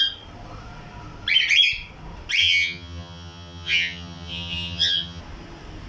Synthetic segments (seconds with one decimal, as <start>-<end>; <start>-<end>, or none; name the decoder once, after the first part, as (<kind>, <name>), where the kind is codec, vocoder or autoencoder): 2.4-5.2 (vocoder, HiFi-GAN)